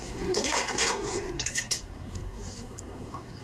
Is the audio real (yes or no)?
no